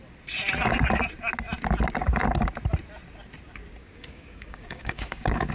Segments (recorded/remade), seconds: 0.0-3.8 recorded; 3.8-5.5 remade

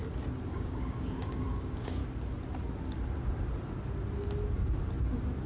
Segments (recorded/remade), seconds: 0.0-0.5 recorded; 0.5-2.0 remade; 2.0-5.5 recorded